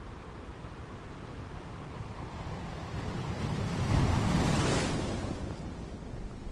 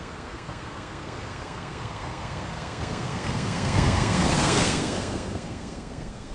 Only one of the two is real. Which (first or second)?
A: first